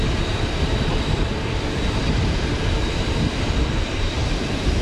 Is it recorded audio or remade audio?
remade